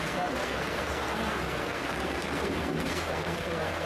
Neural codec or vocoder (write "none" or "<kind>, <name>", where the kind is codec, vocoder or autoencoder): codec, SNAC